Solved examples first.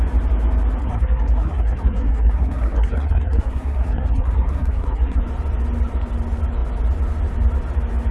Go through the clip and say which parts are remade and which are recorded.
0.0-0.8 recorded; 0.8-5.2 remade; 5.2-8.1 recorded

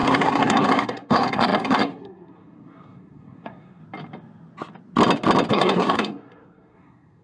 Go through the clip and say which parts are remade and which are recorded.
0.0-3.8 remade; 3.8-5.5 recorded; 5.5-7.2 remade

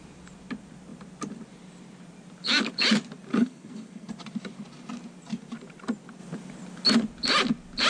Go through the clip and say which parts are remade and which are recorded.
0.0-3.3 recorded; 3.3-4.1 remade; 4.1-7.9 recorded

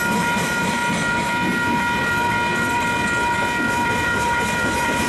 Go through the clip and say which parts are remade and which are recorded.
0.0-0.8 remade; 0.8-3.9 recorded; 3.9-5.1 remade

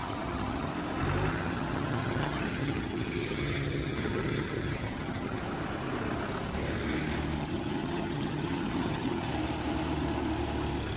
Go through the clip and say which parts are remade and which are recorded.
0.0-0.7 remade; 0.7-1.3 recorded; 1.3-5.4 remade; 5.4-7.4 recorded; 7.4-9.3 remade; 9.3-11.0 recorded

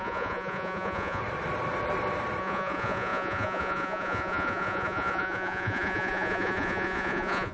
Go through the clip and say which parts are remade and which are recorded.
0.0-1.2 remade; 1.2-2.4 recorded; 2.4-7.5 remade

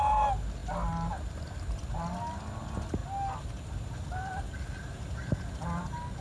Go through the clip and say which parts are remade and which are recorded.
0.0-6.2 recorded